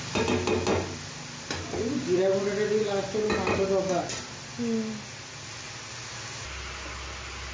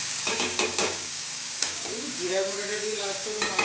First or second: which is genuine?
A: first